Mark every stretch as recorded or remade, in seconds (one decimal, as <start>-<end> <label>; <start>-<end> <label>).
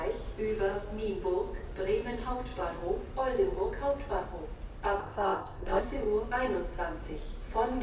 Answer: 0.0-5.0 recorded; 5.0-5.8 remade; 5.8-7.8 recorded